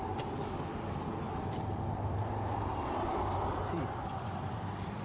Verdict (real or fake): fake